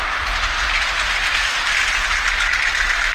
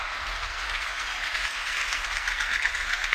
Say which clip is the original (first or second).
first